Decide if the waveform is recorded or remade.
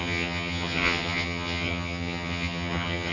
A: remade